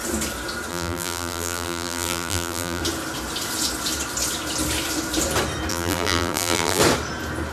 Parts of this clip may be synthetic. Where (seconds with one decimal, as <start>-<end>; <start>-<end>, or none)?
0.7-2.8; 5.7-6.8